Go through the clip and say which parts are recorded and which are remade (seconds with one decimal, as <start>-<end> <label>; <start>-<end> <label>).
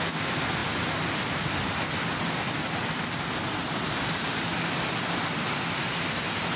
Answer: 0.0-6.6 recorded